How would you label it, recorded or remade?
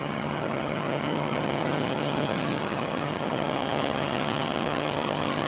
remade